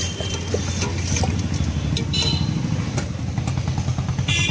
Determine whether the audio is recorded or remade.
recorded